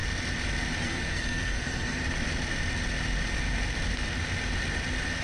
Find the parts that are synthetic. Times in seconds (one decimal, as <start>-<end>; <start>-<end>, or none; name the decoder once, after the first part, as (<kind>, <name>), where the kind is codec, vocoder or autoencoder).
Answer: 0.8-2.0 (codec, SNAC)